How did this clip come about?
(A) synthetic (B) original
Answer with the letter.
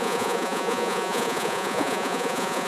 A